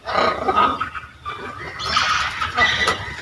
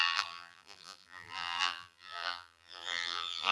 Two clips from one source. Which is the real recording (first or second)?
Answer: first